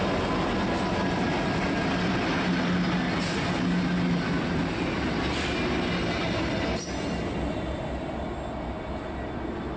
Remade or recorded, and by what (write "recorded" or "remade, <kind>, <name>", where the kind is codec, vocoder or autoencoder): recorded